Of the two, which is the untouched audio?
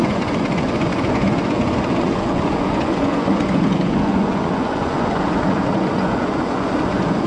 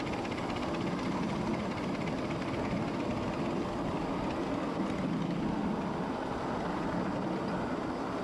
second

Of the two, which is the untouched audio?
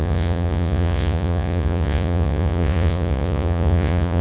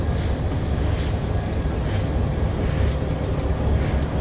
second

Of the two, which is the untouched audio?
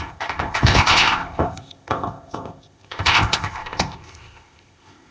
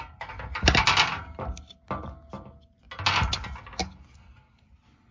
second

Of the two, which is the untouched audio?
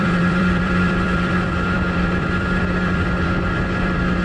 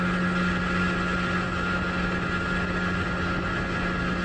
second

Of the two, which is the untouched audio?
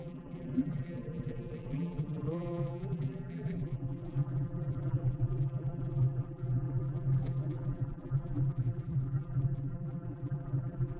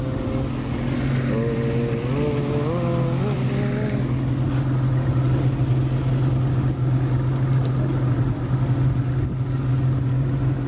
second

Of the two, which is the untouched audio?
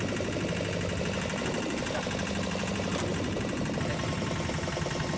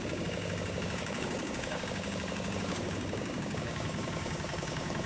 first